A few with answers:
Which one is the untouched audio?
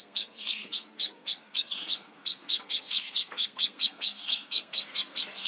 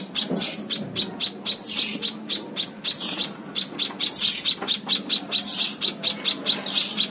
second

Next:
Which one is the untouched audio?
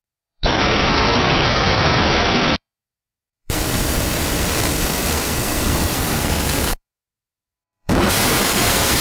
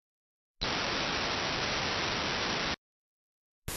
second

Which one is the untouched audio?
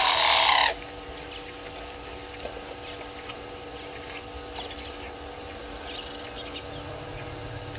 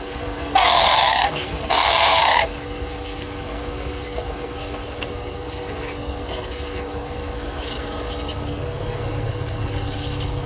first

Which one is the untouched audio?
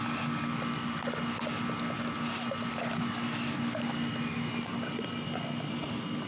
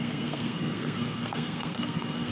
first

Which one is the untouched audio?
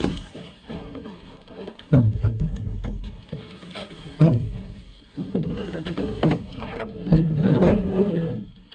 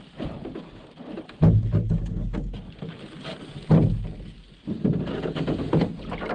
second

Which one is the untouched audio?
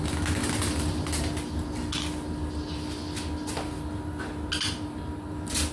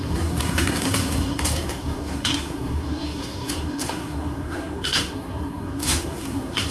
first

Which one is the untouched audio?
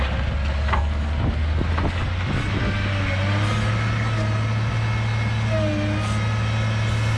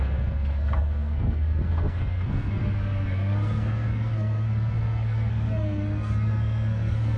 first